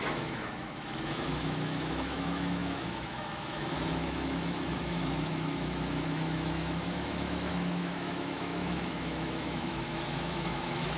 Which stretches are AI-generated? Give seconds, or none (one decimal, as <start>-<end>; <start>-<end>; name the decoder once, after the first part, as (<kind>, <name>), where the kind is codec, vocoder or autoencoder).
0.0-11.0 (autoencoder, DAC-VAE)